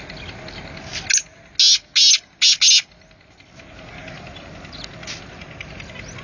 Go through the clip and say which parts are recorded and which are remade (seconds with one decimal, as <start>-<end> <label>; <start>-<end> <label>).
0.0-6.2 recorded